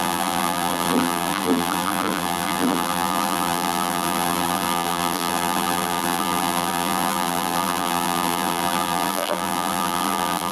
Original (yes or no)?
no